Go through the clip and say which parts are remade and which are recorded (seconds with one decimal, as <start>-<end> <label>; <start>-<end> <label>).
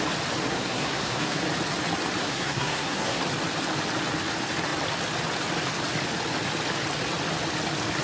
0.0-0.5 recorded; 0.5-1.4 remade; 1.4-2.2 recorded; 2.2-3.2 remade; 3.2-8.0 recorded